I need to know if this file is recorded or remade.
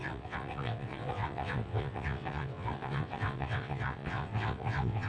remade